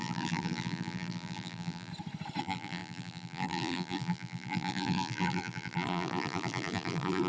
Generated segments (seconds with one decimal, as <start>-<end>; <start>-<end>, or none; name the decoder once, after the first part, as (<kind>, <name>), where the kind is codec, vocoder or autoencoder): 0.0-1.9 (vocoder, BigVGAN v2); 2.4-7.3

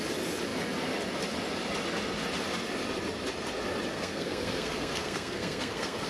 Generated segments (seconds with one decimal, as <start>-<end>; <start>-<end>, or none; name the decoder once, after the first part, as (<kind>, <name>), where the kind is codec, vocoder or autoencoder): 3.9-6.1 (codec, SNAC)